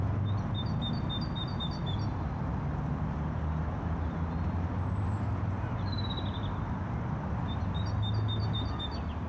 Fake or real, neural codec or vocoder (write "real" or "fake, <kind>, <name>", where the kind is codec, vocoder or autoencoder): real